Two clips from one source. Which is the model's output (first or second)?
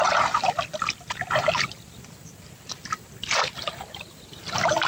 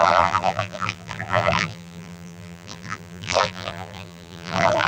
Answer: second